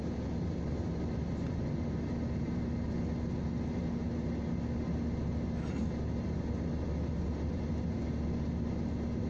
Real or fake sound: real